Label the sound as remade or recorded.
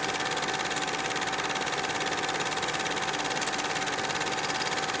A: recorded